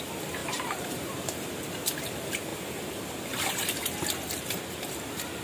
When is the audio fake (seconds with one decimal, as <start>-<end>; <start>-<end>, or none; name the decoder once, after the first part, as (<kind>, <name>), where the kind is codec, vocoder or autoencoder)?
0.4-1.5 (vocoder, BigVGAN v2)